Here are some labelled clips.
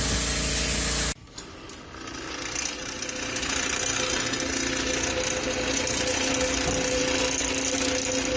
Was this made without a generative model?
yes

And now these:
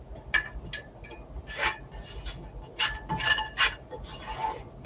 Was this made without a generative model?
yes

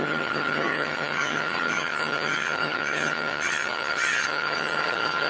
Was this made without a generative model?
no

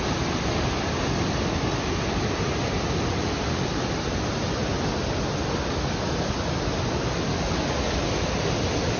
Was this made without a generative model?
yes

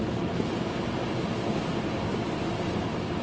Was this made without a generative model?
yes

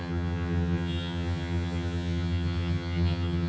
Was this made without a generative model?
no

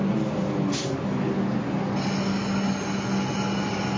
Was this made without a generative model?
yes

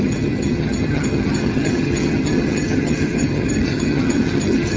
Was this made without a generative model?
no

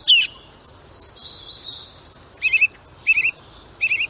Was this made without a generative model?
yes